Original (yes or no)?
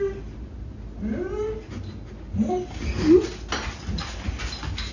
yes